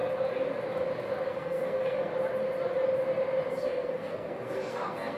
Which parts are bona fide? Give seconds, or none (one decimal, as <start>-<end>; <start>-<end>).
0.0-1.3; 2.1-3.5

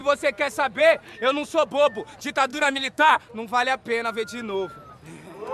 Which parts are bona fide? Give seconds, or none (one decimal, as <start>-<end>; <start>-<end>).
0.0-2.5; 3.2-5.5

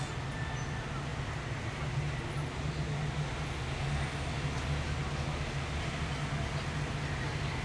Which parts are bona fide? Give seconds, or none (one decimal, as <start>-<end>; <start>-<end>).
0.0-7.6

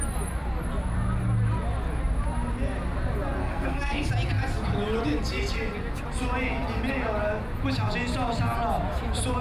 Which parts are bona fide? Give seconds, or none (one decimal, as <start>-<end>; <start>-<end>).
0.0-3.4; 4.1-9.4

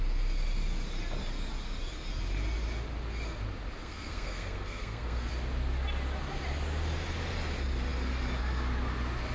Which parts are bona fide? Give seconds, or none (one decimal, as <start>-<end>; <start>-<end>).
0.0-3.8; 5.3-9.3